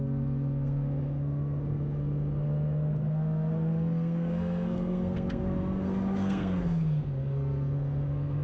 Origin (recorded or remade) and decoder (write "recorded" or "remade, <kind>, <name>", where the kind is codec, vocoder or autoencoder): remade, codec, SNAC